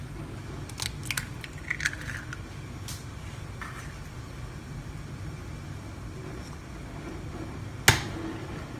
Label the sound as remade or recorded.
recorded